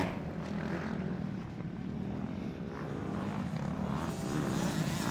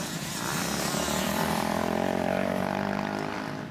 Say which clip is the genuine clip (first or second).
first